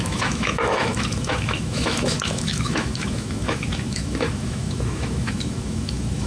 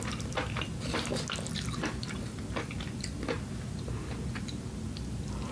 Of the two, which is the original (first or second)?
second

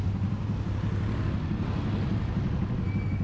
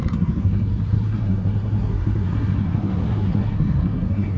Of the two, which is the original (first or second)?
first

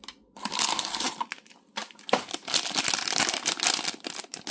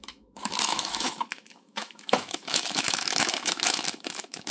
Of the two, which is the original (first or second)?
first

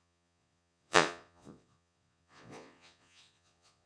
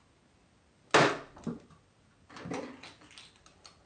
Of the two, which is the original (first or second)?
second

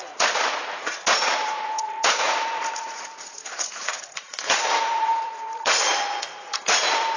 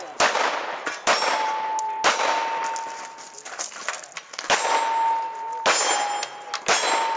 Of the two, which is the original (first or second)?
second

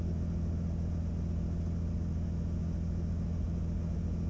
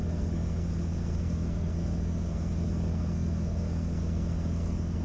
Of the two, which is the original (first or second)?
first